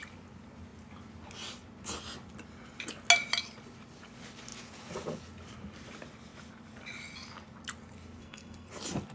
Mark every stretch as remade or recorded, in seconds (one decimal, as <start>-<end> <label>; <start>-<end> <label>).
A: 0.0-8.2 recorded; 8.2-8.7 remade; 8.7-9.1 recorded